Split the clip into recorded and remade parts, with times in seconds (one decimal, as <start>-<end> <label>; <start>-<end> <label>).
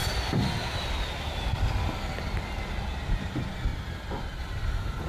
0.0-5.1 recorded